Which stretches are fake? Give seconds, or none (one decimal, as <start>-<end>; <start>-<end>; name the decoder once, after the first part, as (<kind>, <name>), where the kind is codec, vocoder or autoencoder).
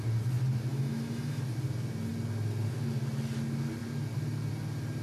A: 0.7-1.4 (autoencoder, DAC-VAE)